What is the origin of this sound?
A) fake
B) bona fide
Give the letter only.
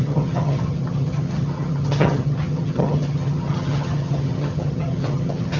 A